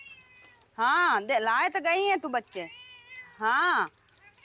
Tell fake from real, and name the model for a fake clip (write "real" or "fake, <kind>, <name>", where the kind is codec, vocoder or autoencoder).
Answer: real